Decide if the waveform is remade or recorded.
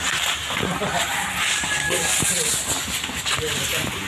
recorded